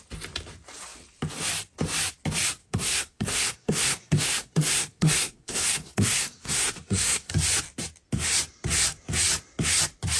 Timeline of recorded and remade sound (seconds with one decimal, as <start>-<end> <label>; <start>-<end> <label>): 0.0-2.6 recorded; 2.6-7.3 remade; 7.3-10.2 recorded

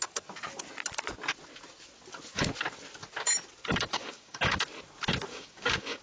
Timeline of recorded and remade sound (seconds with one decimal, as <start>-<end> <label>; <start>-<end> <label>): 0.0-3.9 recorded; 3.9-4.6 remade; 4.6-5.3 recorded; 5.3-6.0 remade

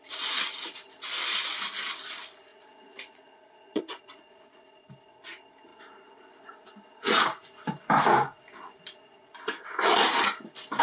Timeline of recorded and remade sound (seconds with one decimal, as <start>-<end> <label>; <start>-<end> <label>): 0.0-2.5 recorded; 2.5-3.8 remade; 3.8-10.8 recorded